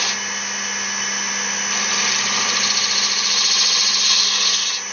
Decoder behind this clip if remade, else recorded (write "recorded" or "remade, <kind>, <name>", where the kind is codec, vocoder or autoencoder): recorded